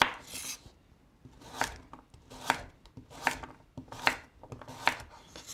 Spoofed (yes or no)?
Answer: no